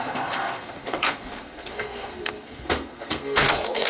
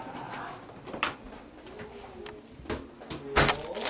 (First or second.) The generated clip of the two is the first